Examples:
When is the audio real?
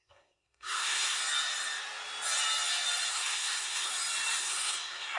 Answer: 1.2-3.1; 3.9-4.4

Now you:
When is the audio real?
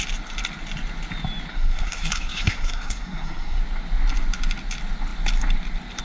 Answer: 0.0-1.5; 3.6-6.0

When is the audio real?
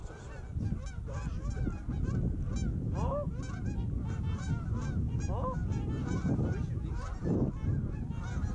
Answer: 0.0-8.5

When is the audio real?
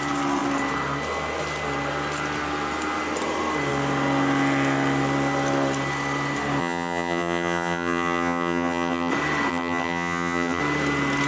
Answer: 0.0-6.6; 9.1-9.5; 10.6-11.3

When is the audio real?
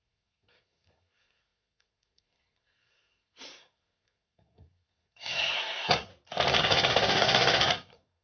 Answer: 6.1-6.6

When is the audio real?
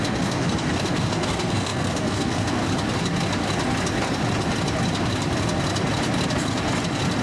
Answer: 2.6-7.2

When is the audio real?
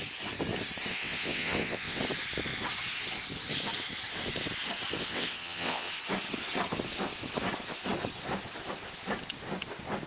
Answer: 0.0-0.9; 2.0-5.0; 5.9-10.1